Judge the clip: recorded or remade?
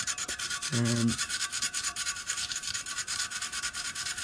remade